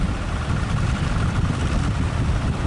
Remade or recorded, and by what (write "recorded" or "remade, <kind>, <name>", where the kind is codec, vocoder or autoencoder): remade, vocoder, BigVGAN v2